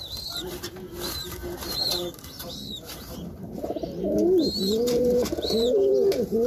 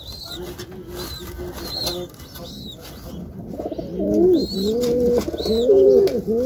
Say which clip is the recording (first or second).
second